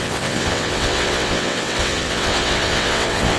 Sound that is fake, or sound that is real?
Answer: fake